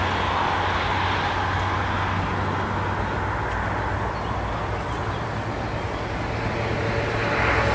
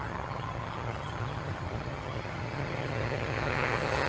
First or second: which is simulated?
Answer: second